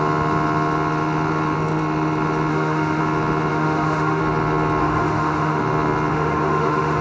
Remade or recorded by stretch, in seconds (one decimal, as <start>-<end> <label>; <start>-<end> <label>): 0.0-2.5 recorded; 2.5-3.0 remade; 3.0-3.5 recorded; 3.5-4.2 remade; 4.2-4.8 recorded; 4.8-5.6 remade; 5.6-6.1 recorded; 6.1-7.0 remade